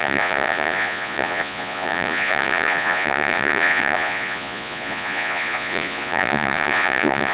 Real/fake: fake